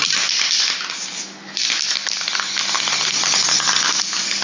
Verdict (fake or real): real